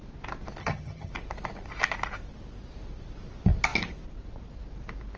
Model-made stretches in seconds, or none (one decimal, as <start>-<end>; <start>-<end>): 0.6-1.1

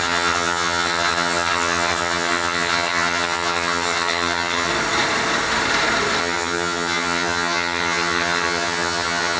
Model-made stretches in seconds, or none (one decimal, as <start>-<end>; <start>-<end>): 0.0-4.7; 6.2-9.4

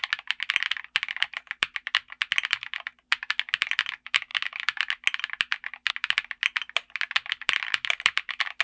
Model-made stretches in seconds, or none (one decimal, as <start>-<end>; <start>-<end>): none

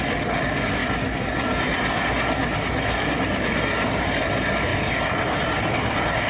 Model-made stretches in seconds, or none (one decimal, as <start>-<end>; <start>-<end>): none

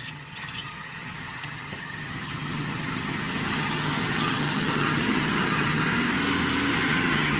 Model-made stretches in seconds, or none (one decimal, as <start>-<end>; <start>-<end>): 0.0-5.8; 6.9-7.4